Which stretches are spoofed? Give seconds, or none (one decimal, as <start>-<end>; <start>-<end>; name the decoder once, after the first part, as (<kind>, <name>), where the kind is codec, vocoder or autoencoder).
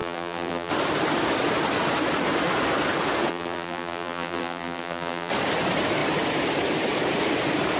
0.0-0.7 (vocoder, BigVGAN v2); 3.3-5.3